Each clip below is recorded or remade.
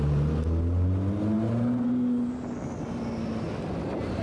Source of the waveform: recorded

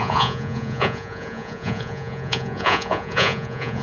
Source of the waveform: remade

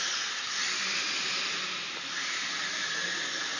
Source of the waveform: recorded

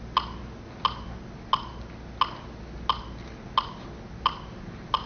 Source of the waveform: recorded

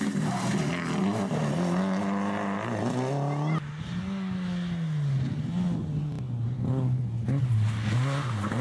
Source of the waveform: recorded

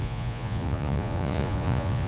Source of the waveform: remade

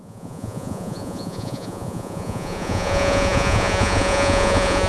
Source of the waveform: remade